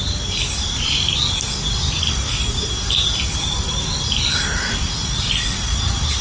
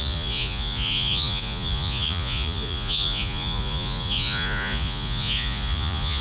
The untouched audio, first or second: first